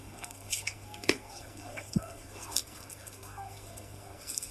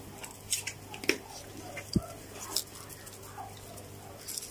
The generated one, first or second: first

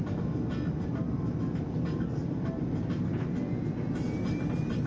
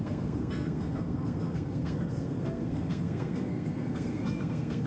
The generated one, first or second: second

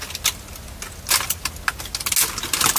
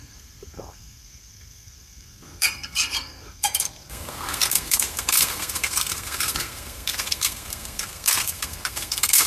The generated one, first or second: second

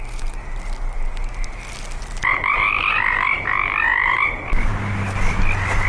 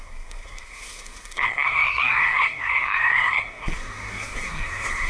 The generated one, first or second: second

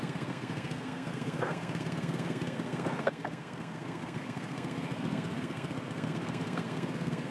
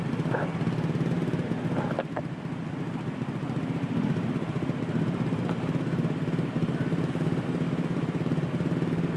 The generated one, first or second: first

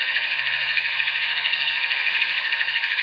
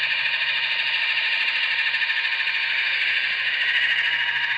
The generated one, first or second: first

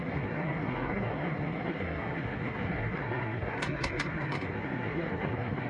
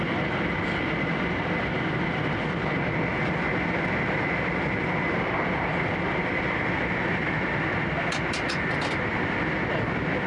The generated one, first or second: first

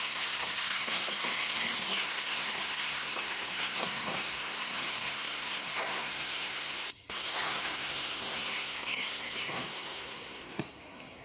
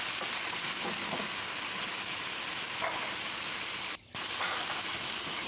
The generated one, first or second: first